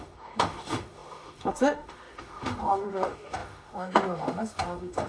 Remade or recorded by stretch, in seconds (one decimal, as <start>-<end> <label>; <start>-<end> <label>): 0.0-5.1 remade